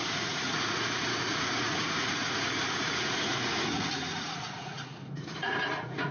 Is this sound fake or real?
fake